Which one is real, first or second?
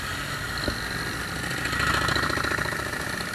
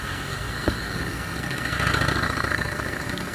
first